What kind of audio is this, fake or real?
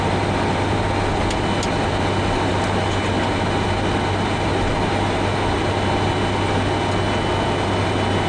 real